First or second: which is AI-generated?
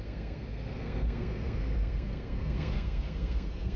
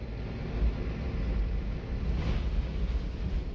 first